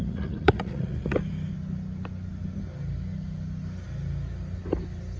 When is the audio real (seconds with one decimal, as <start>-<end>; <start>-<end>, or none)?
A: 1.2-5.2